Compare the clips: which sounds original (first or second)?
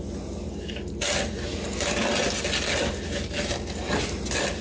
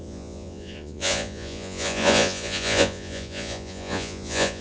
first